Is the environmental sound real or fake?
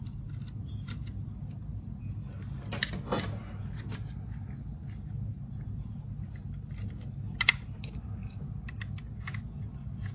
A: real